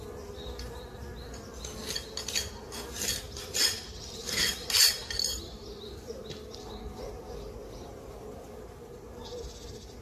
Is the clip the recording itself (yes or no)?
yes